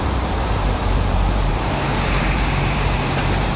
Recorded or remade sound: remade